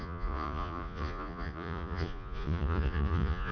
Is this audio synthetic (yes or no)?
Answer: yes